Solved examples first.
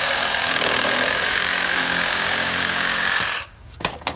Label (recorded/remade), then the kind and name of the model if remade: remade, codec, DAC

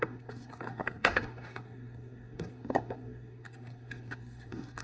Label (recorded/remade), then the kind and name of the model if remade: remade, codec, SNAC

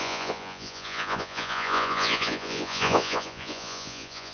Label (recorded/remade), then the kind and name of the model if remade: remade, vocoder, Vocos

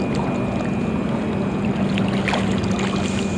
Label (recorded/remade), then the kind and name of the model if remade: recorded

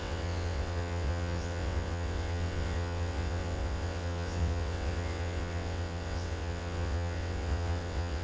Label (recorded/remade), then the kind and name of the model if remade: remade, vocoder, WaveNeXt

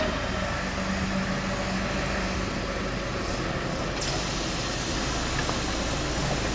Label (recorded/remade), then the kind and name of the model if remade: recorded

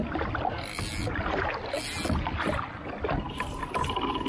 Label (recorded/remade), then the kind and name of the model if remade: recorded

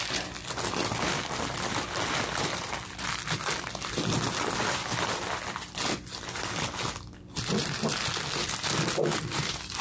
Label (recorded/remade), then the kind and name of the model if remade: recorded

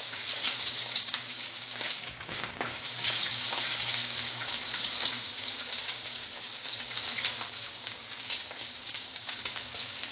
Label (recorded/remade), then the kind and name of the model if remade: remade, codec, DAC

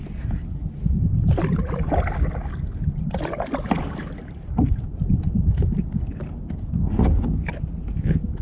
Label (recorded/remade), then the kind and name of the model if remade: recorded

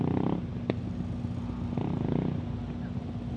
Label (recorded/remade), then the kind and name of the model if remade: recorded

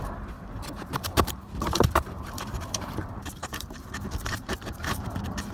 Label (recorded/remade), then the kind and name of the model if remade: remade, vocoder, BigVGAN v2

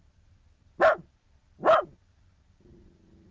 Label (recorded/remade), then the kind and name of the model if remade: recorded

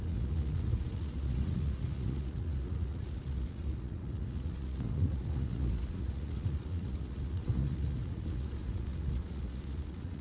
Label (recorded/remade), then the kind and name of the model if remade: remade, vocoder, Vocos